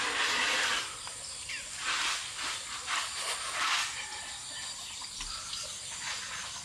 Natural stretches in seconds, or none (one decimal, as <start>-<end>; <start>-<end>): 0.0-6.6